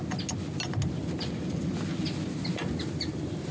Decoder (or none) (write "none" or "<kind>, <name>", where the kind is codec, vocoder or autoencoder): none